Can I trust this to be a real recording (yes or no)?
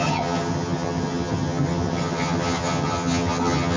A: no